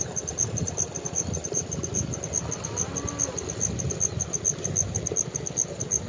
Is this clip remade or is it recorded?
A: recorded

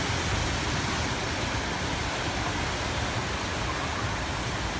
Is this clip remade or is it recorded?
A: recorded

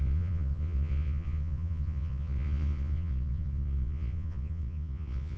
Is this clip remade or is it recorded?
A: remade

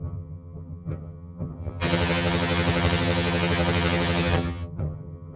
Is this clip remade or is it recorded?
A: remade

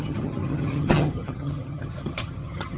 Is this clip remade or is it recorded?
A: remade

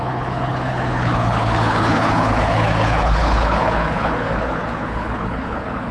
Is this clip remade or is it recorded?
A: remade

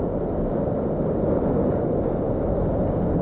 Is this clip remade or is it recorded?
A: recorded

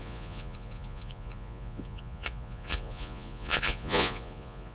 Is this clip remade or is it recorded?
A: remade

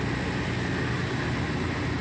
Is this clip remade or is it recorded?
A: recorded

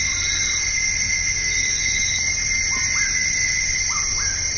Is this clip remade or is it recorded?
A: recorded